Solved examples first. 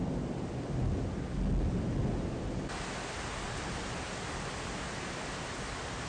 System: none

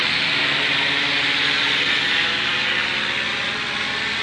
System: none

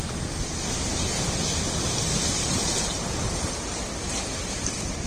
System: none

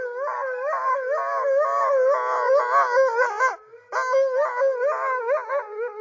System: none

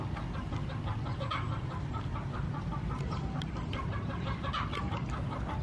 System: none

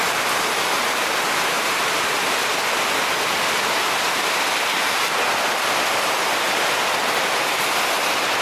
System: none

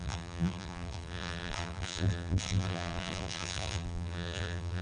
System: vocoder, BigVGAN v2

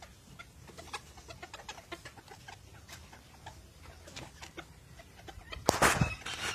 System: none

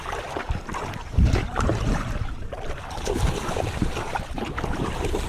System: vocoder, BigVGAN v2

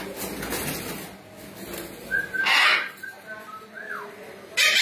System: none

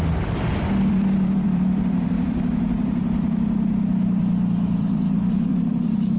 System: vocoder, BigVGAN v2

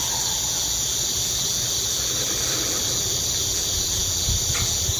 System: vocoder, BigVGAN v2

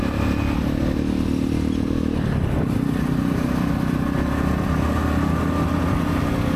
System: none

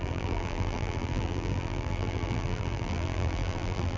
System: vocoder, BigVGAN v2